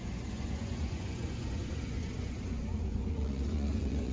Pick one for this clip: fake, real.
fake